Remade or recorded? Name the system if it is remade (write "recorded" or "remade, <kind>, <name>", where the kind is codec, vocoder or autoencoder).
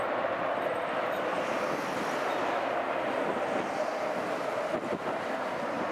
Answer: recorded